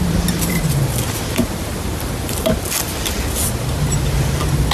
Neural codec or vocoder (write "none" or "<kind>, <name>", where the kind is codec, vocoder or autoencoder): none